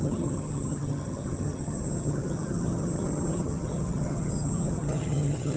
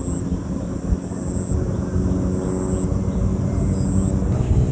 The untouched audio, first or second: second